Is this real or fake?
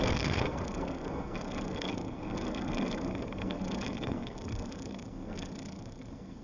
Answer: fake